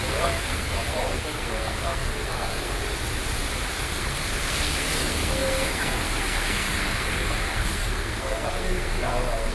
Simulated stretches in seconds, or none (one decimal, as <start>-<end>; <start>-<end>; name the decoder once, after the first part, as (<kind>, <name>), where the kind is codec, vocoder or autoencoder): 0.0-2.8 (codec, SNAC); 3.7-9.5

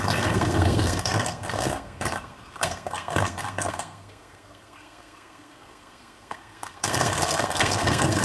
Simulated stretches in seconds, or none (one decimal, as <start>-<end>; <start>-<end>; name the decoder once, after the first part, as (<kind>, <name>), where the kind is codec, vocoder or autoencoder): 0.0-8.2 (codec, SNAC)

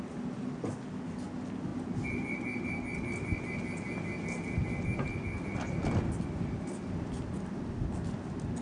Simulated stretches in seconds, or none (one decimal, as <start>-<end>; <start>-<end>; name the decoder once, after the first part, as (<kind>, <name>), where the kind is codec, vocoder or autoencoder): none

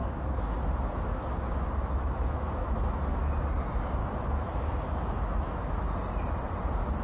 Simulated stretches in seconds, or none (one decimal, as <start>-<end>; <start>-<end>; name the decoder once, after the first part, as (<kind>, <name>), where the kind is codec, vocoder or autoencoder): 0.0-3.3 (autoencoder, DAC-VAE); 4.0-5.9

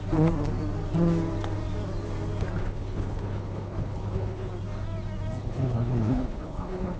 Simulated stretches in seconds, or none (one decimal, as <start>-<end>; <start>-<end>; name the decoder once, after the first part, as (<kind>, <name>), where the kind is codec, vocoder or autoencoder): 2.6-4.5 (codec, HILCodec); 5.4-7.0